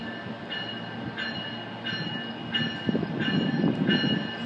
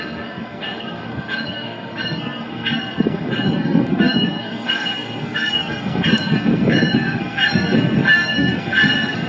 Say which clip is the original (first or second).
first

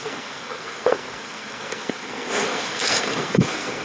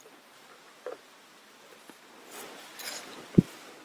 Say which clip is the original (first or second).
second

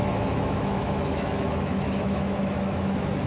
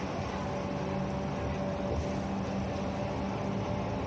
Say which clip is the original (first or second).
second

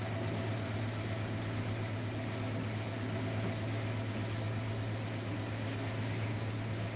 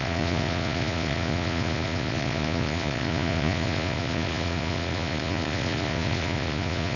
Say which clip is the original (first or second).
first